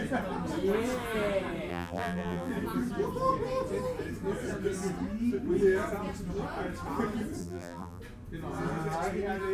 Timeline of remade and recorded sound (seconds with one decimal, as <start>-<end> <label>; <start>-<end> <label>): 0.0-1.7 recorded; 1.7-2.5 remade; 2.5-7.4 recorded; 7.4-8.0 remade; 8.0-9.5 recorded

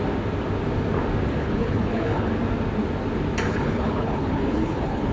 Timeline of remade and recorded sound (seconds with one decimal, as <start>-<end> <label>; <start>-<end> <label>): 0.0-1.4 recorded; 1.4-2.3 remade; 2.3-3.5 recorded; 3.5-5.1 remade

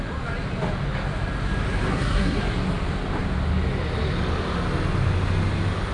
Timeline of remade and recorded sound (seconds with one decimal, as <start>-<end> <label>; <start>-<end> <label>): 0.0-1.9 recorded; 1.9-2.4 remade; 2.4-5.9 recorded

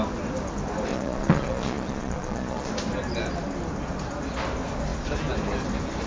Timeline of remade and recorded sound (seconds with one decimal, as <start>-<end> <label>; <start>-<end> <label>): 0.0-0.9 recorded; 0.9-2.7 remade; 2.7-6.1 recorded